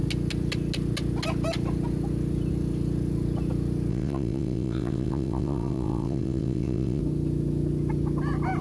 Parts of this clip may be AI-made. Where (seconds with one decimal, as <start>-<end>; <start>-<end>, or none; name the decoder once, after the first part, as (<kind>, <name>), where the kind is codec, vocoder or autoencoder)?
3.9-7.0 (vocoder, WaveNeXt)